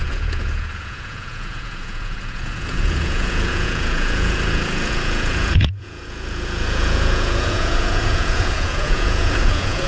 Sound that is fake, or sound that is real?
fake